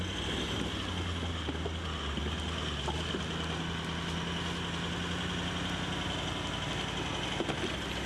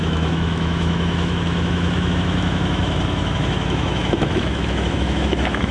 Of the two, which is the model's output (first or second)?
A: second